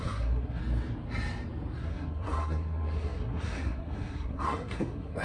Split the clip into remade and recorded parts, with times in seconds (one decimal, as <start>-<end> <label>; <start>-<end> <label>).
0.0-0.6 remade; 0.6-1.8 recorded; 1.8-5.2 remade